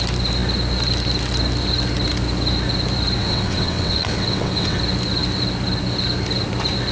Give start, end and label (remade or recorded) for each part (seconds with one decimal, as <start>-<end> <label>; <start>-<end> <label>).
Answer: 0.0-3.2 recorded; 3.2-4.8 remade; 4.8-6.9 recorded